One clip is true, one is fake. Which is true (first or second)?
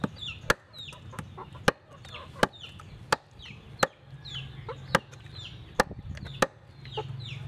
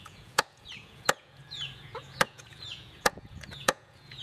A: first